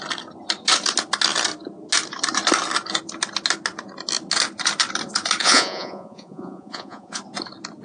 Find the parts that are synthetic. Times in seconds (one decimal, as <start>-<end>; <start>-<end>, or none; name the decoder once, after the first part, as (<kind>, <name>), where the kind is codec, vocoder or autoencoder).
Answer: 5.4-7.2 (vocoder, Vocos)